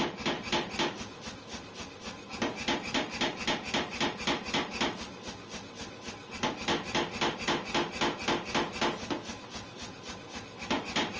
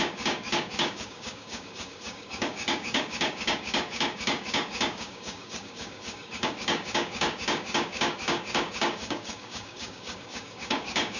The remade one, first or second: second